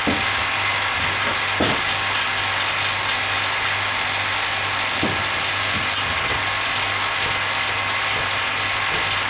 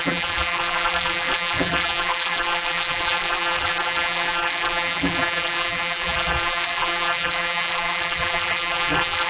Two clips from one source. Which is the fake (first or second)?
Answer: second